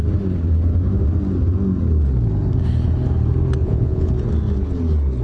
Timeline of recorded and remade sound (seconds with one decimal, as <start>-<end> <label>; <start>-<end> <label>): 0.0-3.6 recorded; 3.6-4.1 remade; 4.1-5.2 recorded